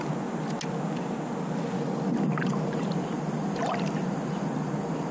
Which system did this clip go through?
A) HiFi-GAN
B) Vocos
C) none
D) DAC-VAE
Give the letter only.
C